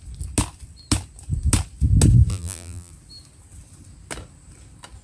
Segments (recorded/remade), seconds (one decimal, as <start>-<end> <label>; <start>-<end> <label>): 0.0-2.3 recorded; 2.3-2.9 remade; 2.9-5.0 recorded